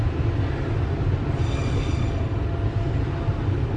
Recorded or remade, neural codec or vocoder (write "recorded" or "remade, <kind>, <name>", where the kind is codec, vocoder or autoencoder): recorded